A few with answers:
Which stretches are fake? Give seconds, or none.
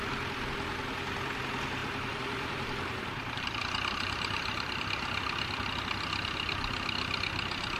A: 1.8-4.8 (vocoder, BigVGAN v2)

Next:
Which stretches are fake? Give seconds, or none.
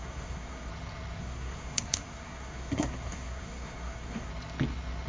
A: 0.0-0.7 (codec, SNAC); 1.2-4.3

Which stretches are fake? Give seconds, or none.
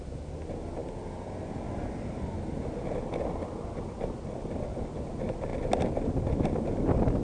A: none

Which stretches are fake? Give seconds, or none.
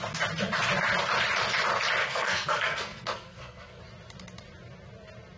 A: 2.0-3.8 (codec, SNAC)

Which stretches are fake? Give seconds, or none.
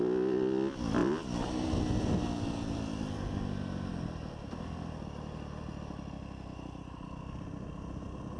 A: none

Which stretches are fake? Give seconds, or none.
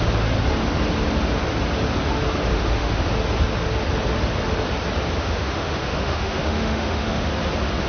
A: 2.5-3.1 (autoencoder, DAC-VAE); 5.2-7.3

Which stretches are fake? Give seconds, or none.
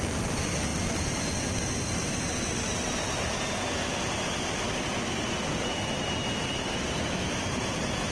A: none